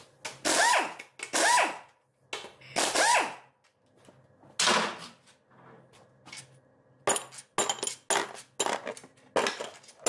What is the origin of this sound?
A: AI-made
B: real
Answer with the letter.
B